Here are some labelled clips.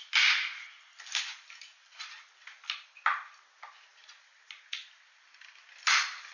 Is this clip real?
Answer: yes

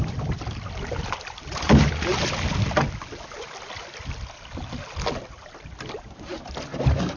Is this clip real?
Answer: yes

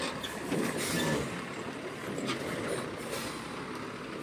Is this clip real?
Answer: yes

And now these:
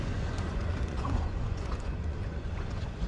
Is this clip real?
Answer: no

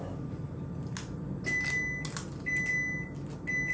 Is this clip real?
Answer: yes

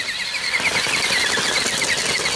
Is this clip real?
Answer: yes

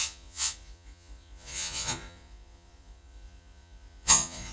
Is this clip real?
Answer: no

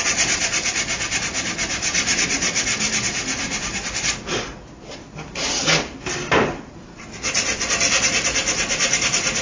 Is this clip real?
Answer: yes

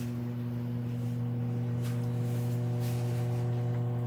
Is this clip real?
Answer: yes